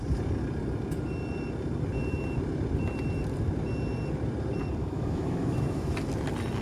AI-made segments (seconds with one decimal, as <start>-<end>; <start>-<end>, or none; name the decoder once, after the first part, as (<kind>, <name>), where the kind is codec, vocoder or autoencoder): 4.8-5.9 (autoencoder, DAC-VAE)